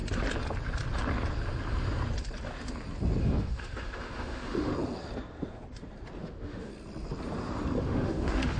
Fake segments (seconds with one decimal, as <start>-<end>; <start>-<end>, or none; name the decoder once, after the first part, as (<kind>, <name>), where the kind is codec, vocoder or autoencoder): 3.2-4.7 (autoencoder, DAC-VAE); 6.2-6.7; 7.8-8.6